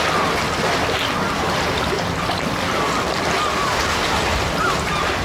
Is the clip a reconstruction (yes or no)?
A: no